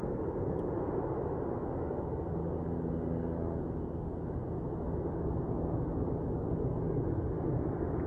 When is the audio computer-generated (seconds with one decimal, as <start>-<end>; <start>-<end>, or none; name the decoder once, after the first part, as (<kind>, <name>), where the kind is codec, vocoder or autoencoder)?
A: none